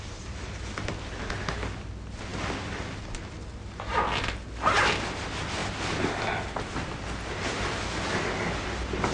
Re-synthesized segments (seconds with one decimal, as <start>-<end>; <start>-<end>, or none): none